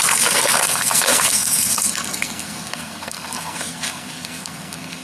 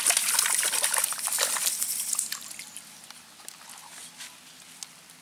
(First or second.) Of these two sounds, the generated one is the first